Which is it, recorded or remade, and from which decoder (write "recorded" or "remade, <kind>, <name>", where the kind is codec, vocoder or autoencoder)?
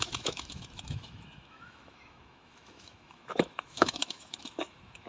remade, autoencoder, DAC-VAE